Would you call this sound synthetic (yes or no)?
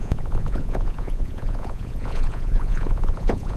yes